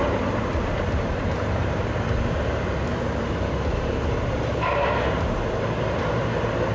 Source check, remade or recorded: remade